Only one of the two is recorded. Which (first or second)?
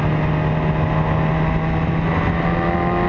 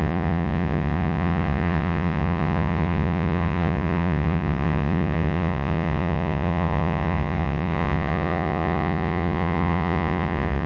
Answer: first